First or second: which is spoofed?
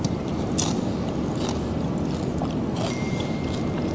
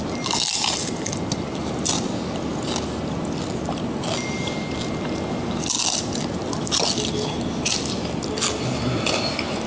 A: first